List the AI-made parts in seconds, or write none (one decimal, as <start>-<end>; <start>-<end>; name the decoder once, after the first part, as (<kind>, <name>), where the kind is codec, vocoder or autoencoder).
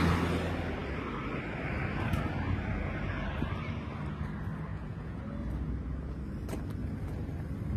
4.7-5.2 (vocoder, Vocos)